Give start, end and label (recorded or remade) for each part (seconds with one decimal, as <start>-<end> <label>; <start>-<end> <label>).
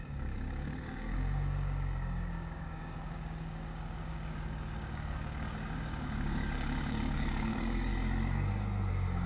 0.0-7.9 remade; 7.9-8.9 recorded; 8.9-9.3 remade